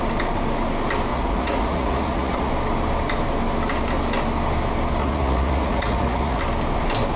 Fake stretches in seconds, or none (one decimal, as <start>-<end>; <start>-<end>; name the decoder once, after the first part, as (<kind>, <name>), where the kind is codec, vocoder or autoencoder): 1.1-2.5 (vocoder, Vocos); 5.0-6.4